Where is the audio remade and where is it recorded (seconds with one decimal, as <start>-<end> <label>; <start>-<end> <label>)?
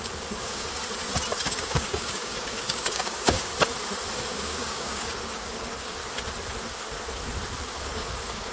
0.0-0.8 remade; 0.8-1.5 recorded; 1.5-3.5 remade; 3.5-4.3 recorded; 4.3-6.0 remade; 6.0-7.6 recorded; 7.6-8.5 remade